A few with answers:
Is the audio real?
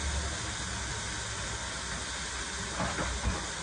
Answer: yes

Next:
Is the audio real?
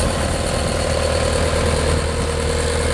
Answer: yes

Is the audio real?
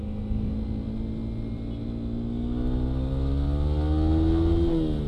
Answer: yes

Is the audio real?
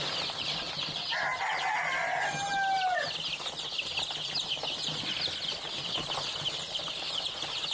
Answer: yes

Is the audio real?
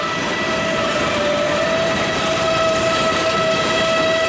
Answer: no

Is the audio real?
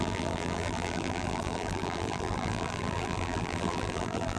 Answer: no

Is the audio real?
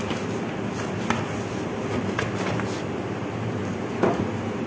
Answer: yes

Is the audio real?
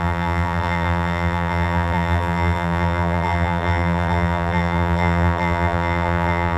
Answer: no